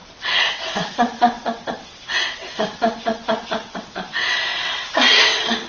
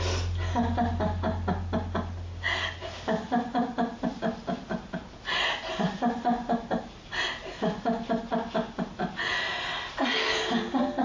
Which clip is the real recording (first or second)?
second